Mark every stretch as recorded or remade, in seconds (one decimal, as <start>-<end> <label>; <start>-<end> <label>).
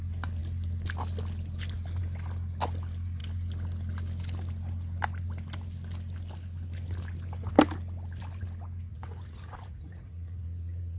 0.0-8.9 recorded; 8.9-11.0 remade